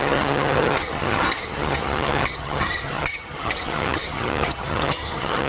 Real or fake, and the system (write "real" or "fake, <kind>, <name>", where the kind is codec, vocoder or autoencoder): fake, vocoder, HiFi-GAN